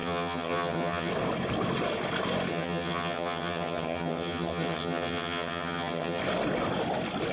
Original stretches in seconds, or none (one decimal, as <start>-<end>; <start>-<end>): 1.1-2.5; 6.2-7.3